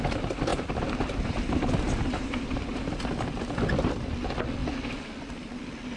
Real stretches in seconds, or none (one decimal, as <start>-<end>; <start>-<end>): 0.0-0.5; 2.9-6.0